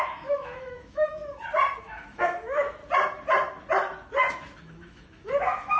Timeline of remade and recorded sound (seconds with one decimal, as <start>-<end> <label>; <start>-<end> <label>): 0.0-1.2 remade; 1.2-1.8 recorded; 1.8-2.8 remade; 2.8-4.6 recorded; 4.6-5.8 remade